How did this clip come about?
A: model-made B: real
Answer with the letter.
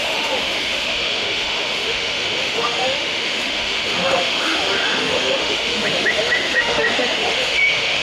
A